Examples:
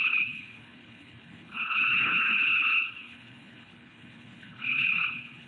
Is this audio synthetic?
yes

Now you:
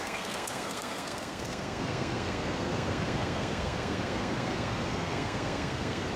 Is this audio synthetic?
yes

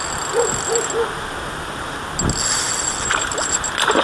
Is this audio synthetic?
no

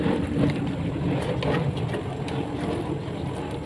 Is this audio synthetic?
no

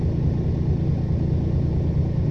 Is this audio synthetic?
no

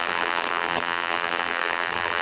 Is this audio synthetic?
yes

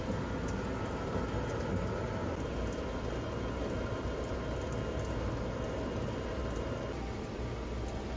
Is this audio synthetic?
no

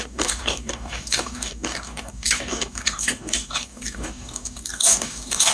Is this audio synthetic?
yes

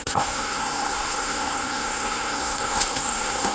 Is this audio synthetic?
yes